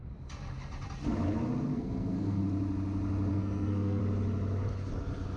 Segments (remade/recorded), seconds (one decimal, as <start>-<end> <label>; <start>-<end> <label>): 0.0-1.7 recorded; 1.7-2.4 remade; 2.4-3.3 recorded; 3.3-4.0 remade; 4.0-5.4 recorded